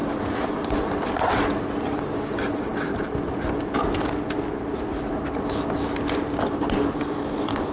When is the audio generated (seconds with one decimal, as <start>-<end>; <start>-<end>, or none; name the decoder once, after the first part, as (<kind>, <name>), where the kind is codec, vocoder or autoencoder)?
none